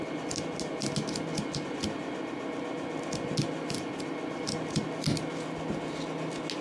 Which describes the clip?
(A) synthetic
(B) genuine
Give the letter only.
B